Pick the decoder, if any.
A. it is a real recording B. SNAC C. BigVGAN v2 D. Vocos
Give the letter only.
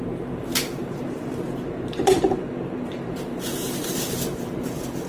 C